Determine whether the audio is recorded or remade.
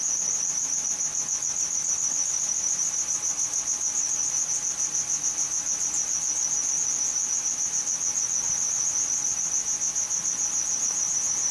recorded